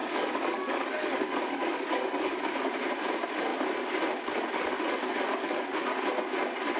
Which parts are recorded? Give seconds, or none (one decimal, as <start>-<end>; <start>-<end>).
2.5-5.3; 6.0-6.8